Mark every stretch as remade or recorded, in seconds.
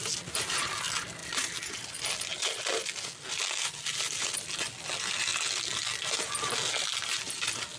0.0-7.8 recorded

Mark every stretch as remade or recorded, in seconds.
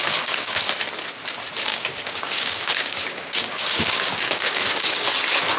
0.0-0.6 remade; 0.6-1.7 recorded; 1.7-5.1 remade; 5.1-5.6 recorded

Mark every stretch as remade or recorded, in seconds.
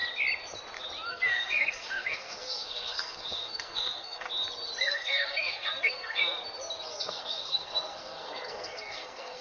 0.0-1.1 recorded; 1.1-4.3 remade; 4.3-4.8 recorded; 4.8-6.2 remade; 6.2-6.9 recorded; 6.9-9.4 remade